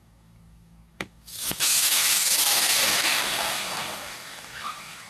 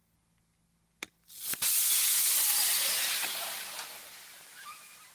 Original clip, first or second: second